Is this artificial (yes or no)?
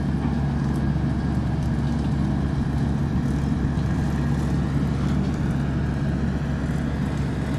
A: no